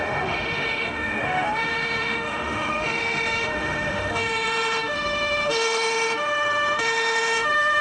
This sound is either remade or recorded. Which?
remade